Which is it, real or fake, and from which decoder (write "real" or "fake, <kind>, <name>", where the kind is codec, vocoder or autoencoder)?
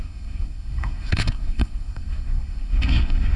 fake, codec, SNAC